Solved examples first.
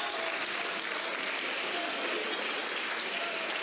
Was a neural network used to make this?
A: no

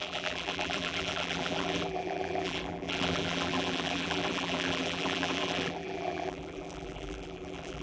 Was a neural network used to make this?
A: yes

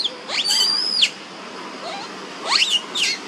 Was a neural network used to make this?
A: no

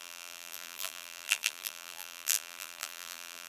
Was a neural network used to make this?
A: yes